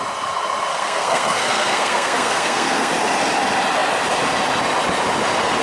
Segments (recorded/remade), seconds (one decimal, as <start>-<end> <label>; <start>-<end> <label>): 0.0-0.7 recorded; 0.7-2.9 remade; 2.9-5.6 recorded